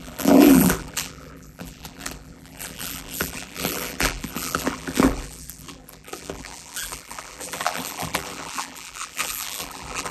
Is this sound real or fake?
fake